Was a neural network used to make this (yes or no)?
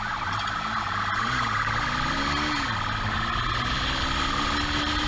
no